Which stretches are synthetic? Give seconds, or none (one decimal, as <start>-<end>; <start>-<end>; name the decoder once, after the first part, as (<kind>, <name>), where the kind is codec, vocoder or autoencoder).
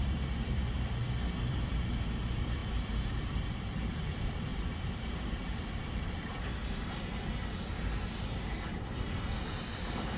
0.0-1.0 (vocoder, BigVGAN v2); 1.5-6.6; 9.2-10.2